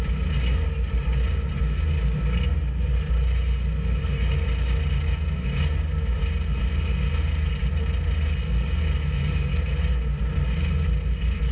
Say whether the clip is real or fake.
real